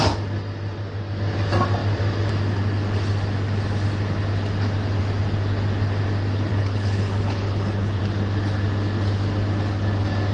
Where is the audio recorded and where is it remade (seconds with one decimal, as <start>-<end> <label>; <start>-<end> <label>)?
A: 0.0-6.5 recorded; 6.5-8.0 remade; 8.0-10.3 recorded